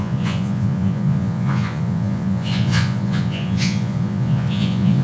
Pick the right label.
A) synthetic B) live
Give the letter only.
A